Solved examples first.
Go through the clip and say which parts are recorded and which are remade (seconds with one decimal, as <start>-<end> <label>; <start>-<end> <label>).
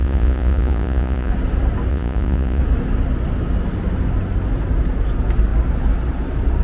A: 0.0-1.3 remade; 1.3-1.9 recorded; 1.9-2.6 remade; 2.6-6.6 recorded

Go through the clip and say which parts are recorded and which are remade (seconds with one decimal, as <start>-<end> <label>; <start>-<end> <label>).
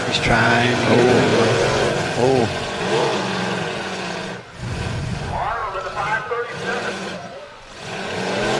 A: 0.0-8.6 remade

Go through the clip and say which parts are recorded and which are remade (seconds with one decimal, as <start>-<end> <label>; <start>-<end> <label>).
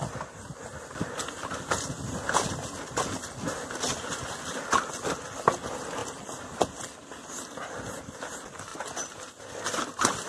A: 0.0-10.3 recorded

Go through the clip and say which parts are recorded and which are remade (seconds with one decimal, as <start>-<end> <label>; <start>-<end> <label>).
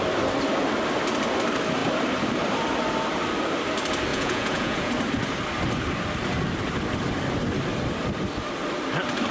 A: 0.0-4.1 recorded; 4.1-4.9 remade; 4.9-9.3 recorded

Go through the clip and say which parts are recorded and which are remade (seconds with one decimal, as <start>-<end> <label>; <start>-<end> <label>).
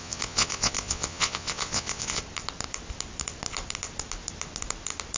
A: 0.0-2.2 remade; 2.2-5.2 recorded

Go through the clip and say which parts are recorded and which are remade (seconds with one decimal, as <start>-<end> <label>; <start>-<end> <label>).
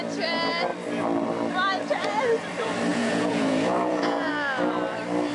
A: 0.0-2.9 recorded; 2.9-4.3 remade; 4.3-5.3 recorded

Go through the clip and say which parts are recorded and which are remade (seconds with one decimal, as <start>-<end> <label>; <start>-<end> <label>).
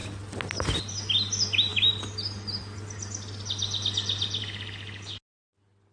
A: 0.0-5.9 recorded